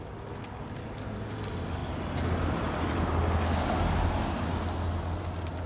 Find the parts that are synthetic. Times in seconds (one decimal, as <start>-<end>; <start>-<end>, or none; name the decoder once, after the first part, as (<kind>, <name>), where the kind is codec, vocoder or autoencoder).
none